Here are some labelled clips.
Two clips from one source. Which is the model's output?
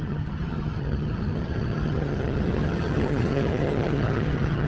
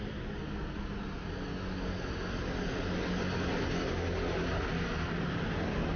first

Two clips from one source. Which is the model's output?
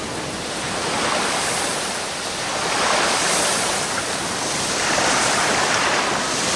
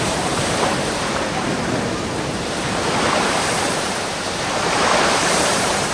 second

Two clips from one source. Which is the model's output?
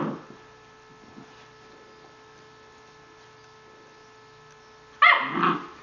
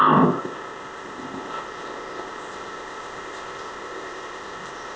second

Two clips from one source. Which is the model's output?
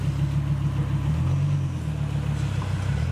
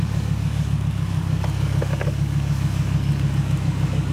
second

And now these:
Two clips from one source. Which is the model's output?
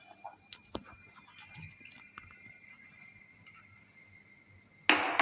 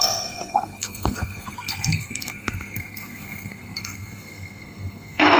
second